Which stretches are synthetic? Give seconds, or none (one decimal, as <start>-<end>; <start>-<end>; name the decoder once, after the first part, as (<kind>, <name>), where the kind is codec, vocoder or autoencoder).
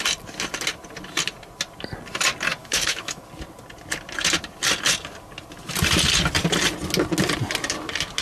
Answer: 2.6-3.2 (autoencoder, DAC-VAE)